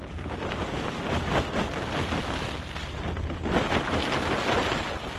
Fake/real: real